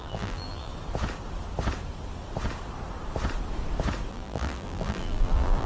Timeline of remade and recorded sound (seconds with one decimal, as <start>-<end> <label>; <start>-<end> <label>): 0.0-0.7 remade; 0.7-4.1 recorded; 4.1-5.7 remade